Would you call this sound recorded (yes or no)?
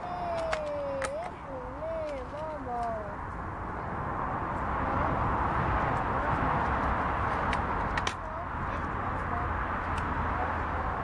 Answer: yes